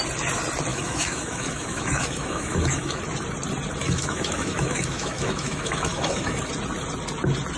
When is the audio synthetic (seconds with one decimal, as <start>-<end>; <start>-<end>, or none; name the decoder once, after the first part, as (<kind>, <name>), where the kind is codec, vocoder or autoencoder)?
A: 0.7-3.0 (autoencoder, DAC-VAE); 3.8-6.5